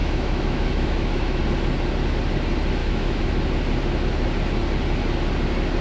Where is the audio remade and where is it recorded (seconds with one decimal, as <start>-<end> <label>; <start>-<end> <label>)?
0.0-1.4 remade; 1.4-2.8 recorded; 2.8-3.3 remade; 3.3-5.8 recorded

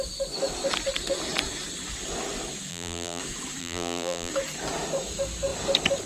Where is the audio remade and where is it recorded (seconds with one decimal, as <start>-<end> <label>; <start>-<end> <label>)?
0.0-2.7 recorded; 2.7-3.2 remade; 3.2-3.6 recorded; 3.6-4.3 remade; 4.3-6.1 recorded

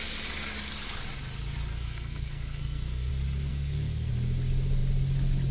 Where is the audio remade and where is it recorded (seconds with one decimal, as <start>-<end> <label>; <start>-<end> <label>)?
0.0-1.7 recorded; 1.7-3.1 remade; 3.1-3.5 recorded; 3.5-4.1 remade; 4.1-5.5 recorded

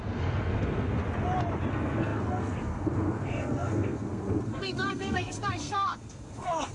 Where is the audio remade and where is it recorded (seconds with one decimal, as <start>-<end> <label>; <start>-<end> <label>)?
0.0-1.0 remade; 1.0-1.7 recorded; 1.7-6.7 remade